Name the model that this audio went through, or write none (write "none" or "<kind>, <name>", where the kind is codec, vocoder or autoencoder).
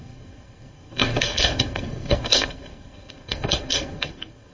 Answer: codec, SNAC